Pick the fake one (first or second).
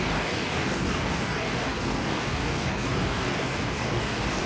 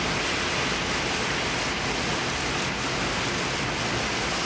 first